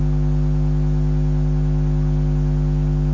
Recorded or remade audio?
recorded